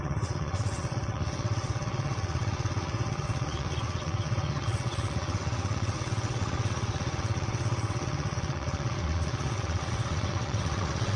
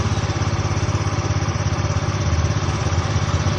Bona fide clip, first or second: second